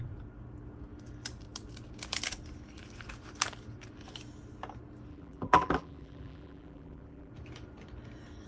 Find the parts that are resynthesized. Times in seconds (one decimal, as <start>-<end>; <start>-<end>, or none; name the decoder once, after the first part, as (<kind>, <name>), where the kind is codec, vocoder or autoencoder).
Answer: 5.1-7.3 (vocoder, BigVGAN v2)

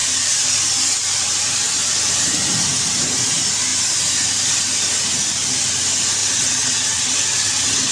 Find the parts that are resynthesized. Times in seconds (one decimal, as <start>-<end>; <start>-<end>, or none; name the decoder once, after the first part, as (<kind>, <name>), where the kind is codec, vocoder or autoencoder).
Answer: 6.2-7.9 (vocoder, WaveNeXt)

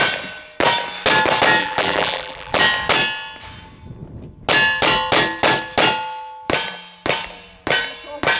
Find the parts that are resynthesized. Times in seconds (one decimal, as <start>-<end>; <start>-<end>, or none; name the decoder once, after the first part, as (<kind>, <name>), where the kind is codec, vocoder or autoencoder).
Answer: 1.6-2.6 (vocoder, BigVGAN v2)

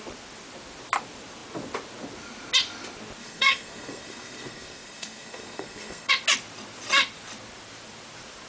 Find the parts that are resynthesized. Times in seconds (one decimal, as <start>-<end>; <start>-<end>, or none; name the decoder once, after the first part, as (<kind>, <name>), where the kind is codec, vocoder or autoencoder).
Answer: 3.2-6.1 (codec, SNAC)

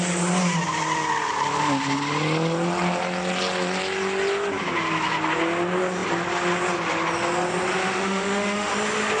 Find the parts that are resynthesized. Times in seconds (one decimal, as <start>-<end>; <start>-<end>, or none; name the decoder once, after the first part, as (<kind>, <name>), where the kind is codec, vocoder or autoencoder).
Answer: 7.8-8.7 (autoencoder, DAC-VAE)

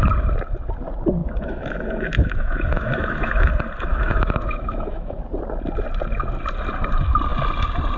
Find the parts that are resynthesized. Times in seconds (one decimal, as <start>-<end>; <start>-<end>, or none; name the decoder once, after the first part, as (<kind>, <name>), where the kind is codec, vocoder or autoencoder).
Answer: 1.2-3.5 (autoencoder, DAC-VAE); 3.9-5.2